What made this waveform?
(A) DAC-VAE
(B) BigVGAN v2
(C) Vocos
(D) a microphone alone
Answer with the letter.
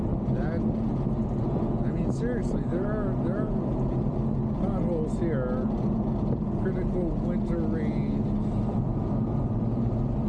D